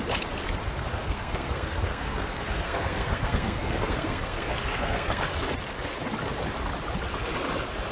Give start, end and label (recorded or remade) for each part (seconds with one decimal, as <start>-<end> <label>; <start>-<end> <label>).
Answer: 0.0-0.9 recorded; 0.9-5.2 remade; 5.2-7.9 recorded